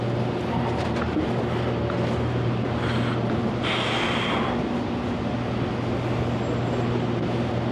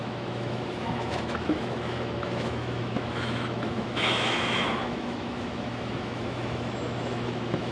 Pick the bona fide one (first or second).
first